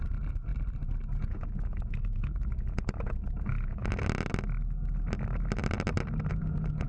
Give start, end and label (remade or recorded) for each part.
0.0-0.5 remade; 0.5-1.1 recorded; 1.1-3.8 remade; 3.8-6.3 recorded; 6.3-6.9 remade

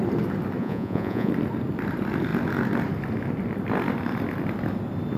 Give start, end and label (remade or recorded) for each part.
0.0-0.6 recorded; 0.6-1.3 remade; 1.3-5.2 recorded

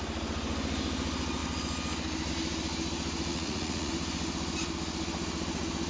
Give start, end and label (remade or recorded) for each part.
0.0-3.3 recorded; 3.3-3.9 remade; 3.9-5.9 recorded

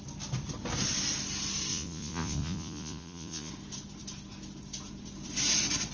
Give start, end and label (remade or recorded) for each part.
0.0-1.7 recorded; 1.7-3.5 remade; 3.5-5.9 recorded

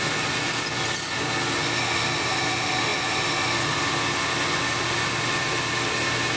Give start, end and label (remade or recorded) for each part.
0.0-6.4 recorded

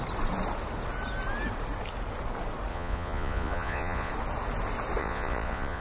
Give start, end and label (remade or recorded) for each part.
0.0-2.7 recorded; 2.7-4.1 remade; 4.1-5.0 recorded; 5.0-5.8 remade

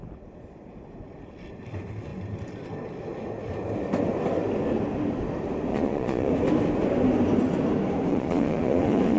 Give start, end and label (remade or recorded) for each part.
0.0-5.7 recorded; 5.7-6.3 remade; 6.3-8.1 recorded; 8.1-9.2 remade